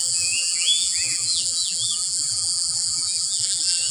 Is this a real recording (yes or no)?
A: no